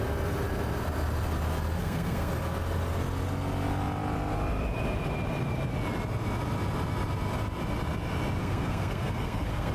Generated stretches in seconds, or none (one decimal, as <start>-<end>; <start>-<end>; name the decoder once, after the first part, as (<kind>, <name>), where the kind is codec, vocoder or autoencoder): 1.8-2.3 (codec, SNAC); 8.4-9.7